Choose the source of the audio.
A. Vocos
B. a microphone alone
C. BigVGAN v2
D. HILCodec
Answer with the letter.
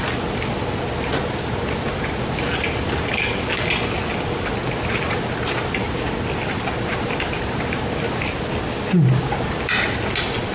B